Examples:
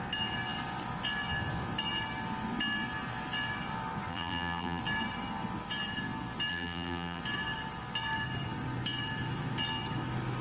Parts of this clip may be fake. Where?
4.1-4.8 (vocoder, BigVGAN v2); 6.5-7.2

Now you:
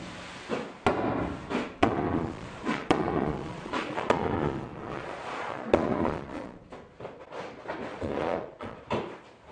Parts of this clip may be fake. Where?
1.8-6.6 (vocoder, Vocos); 7.9-8.8